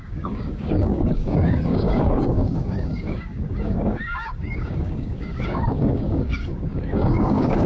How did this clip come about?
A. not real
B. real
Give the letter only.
A